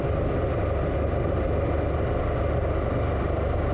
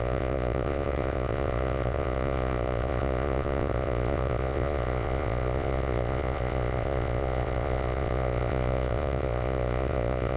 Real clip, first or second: first